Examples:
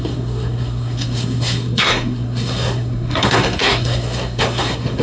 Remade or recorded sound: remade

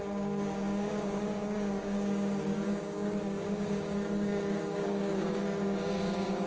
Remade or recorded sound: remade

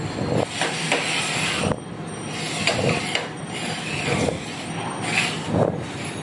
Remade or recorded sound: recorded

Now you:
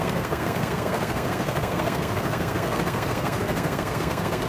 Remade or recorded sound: remade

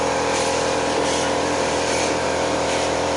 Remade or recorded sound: remade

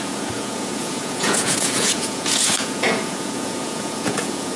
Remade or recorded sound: remade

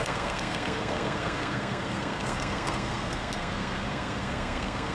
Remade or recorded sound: remade